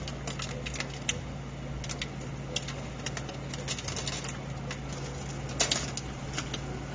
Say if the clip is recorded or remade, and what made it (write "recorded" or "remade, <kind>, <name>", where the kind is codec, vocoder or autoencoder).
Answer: recorded